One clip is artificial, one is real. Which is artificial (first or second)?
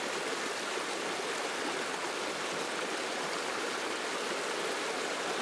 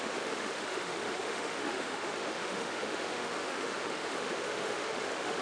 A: second